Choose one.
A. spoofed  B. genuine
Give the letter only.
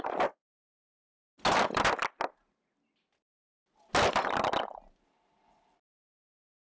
B